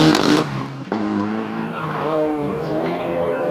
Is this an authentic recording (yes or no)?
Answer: no